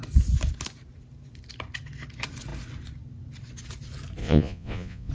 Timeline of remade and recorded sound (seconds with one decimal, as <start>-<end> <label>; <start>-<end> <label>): 0.0-4.2 recorded; 4.2-5.1 remade

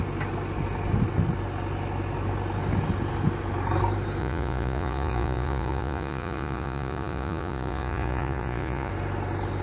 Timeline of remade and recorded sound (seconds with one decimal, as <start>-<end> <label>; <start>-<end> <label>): 0.0-4.2 recorded; 4.2-8.9 remade; 8.9-9.6 recorded

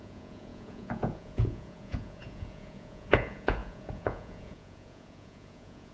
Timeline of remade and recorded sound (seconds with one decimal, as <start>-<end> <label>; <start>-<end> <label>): 0.0-5.9 remade

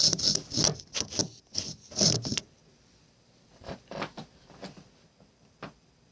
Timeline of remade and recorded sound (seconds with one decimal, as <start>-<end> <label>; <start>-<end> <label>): 0.0-6.1 recorded

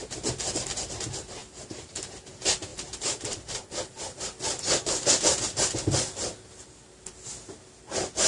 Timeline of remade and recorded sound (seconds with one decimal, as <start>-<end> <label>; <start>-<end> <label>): 0.0-1.4 recorded; 1.4-2.0 remade; 2.0-2.7 recorded; 2.7-3.7 remade; 3.7-8.3 recorded